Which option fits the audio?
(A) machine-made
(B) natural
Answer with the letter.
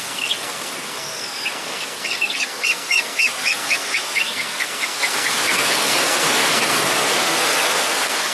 A